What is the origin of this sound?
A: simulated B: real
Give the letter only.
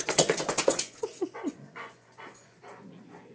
A